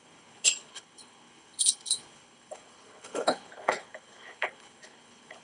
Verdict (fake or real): fake